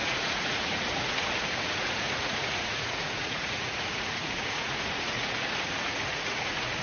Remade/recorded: remade